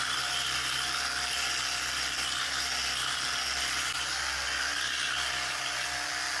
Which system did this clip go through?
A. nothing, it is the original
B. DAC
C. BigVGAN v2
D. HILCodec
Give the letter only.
A